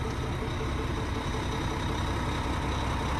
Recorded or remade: recorded